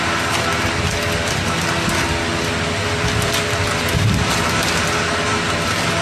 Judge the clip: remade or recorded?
recorded